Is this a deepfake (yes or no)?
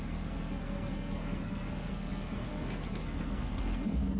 yes